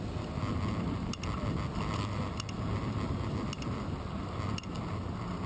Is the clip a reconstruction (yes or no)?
no